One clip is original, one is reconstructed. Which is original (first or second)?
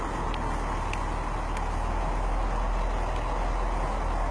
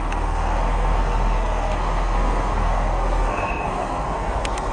first